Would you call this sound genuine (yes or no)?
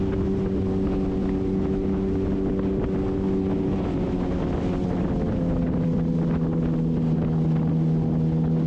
yes